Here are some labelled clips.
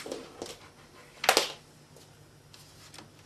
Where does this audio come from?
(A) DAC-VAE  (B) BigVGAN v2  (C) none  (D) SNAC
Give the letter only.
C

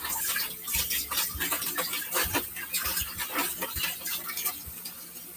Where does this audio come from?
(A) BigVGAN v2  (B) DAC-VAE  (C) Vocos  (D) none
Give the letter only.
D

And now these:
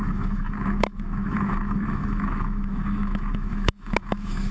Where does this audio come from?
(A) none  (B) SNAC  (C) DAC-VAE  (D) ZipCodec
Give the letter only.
C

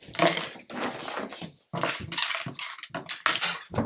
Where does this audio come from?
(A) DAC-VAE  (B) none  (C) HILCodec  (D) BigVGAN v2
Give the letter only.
B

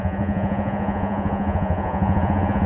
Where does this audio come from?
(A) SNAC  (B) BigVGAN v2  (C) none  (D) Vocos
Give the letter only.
D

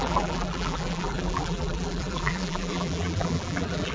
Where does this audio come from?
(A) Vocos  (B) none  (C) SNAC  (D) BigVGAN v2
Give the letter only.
D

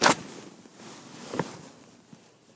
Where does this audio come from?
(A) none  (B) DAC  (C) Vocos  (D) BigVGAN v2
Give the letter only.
A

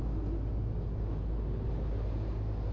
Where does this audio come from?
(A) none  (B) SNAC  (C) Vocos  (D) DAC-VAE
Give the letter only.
A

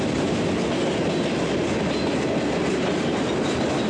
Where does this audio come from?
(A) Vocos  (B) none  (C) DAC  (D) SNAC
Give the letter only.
B